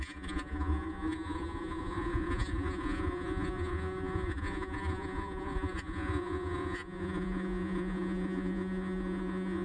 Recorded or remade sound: remade